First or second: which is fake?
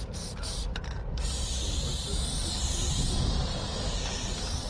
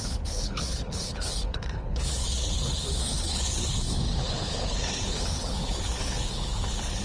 second